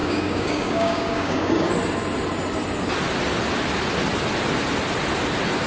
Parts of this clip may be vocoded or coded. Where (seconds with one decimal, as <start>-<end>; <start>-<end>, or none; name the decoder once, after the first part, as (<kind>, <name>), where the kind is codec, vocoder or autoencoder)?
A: 0.0-1.7 (codec, DAC)